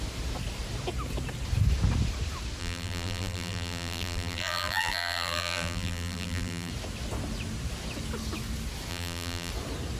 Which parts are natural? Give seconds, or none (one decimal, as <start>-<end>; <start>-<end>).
0.0-2.6; 6.7-8.9; 9.5-10.0